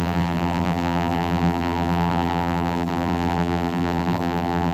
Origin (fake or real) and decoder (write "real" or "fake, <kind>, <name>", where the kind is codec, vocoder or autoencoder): fake, vocoder, BigVGAN v2